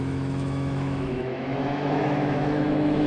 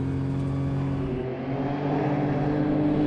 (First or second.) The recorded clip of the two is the second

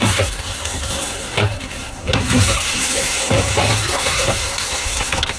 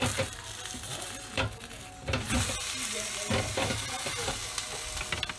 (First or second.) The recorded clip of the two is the second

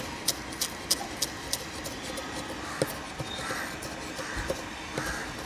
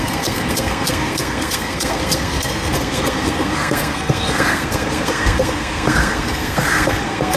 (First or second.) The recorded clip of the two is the first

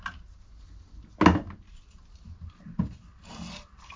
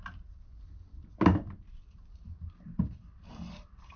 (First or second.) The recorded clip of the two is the first